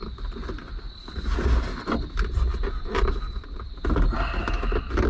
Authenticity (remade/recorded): recorded